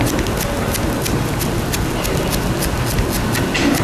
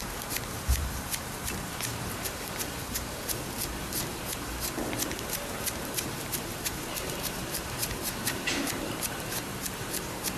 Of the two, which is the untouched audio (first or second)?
first